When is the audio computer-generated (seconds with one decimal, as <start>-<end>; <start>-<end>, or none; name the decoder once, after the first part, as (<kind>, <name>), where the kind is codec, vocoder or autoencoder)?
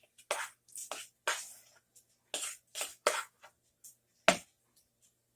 2.9-3.4 (autoencoder, DAC-VAE)